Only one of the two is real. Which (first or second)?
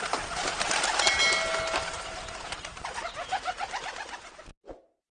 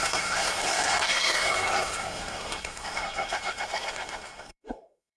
first